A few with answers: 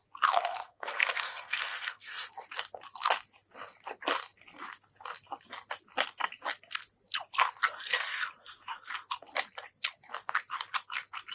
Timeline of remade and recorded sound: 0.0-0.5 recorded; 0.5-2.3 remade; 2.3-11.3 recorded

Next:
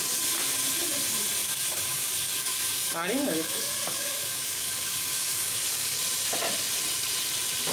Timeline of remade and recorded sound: 0.0-1.4 recorded; 1.4-6.0 remade; 6.0-7.7 recorded

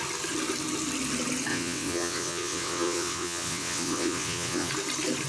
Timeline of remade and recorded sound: 0.0-1.5 recorded; 1.5-4.7 remade; 4.7-5.3 recorded

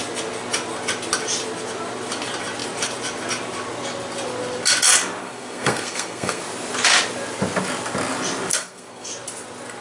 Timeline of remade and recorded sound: 0.0-5.2 recorded; 5.2-6.4 remade; 6.4-8.5 recorded; 8.5-9.1 remade; 9.1-9.8 recorded